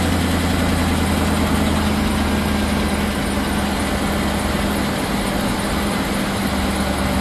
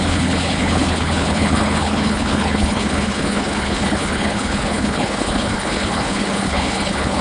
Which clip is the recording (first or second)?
first